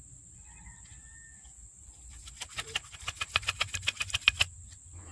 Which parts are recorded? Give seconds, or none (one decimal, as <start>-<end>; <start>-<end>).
0.0-5.1